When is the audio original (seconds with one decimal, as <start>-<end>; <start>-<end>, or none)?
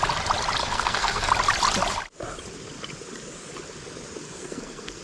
0.0-0.6; 1.3-4.2